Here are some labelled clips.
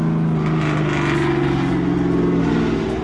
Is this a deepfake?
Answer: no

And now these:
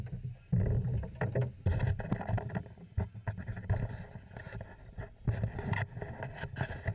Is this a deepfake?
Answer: no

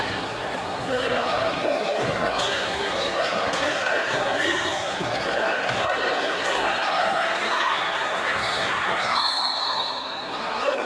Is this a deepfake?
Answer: yes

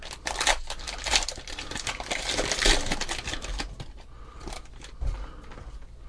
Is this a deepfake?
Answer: no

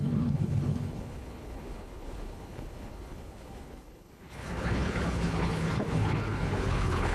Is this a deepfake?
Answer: yes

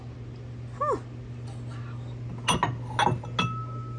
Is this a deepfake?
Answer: no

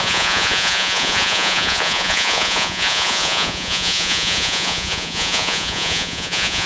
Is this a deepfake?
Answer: yes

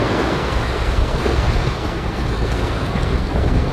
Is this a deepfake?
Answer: yes